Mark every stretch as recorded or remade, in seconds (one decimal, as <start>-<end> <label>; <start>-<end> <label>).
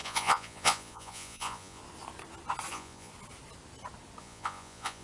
0.0-1.8 remade; 1.8-2.7 recorded; 2.7-3.1 remade; 3.1-4.2 recorded; 4.2-5.0 remade